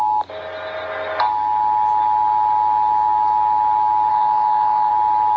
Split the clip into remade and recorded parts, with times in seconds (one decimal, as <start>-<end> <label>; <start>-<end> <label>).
0.0-4.1 recorded; 4.1-4.9 remade; 4.9-5.4 recorded